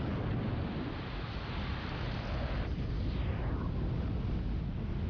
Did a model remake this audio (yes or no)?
no